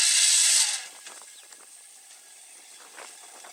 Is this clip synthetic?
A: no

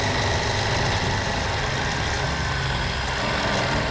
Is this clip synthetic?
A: no